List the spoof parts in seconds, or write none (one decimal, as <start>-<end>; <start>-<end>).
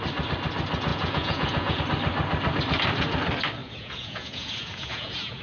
0.9-1.8; 3.6-5.4